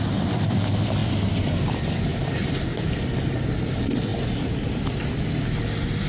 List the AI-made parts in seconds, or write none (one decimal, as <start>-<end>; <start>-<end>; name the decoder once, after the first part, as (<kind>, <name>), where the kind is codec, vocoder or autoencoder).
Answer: 0.0-2.1 (vocoder, BigVGAN v2); 2.6-4.1